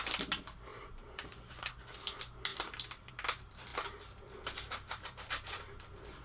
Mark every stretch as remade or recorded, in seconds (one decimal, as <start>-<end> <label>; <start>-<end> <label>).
0.0-0.7 recorded; 0.7-1.7 remade; 1.7-2.5 recorded; 2.5-3.1 remade; 3.1-6.2 recorded